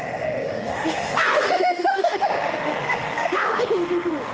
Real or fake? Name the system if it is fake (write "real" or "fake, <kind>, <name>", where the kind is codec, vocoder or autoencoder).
fake, autoencoder, DAC-VAE